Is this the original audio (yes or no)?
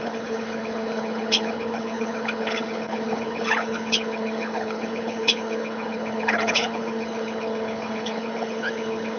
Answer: no